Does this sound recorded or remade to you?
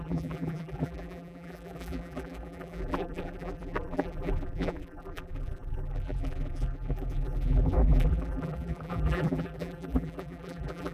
remade